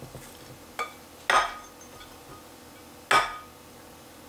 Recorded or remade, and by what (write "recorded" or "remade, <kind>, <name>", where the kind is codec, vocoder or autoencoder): recorded